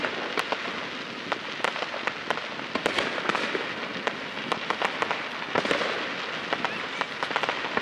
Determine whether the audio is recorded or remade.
recorded